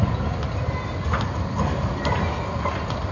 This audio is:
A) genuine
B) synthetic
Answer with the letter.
A